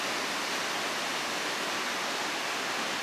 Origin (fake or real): real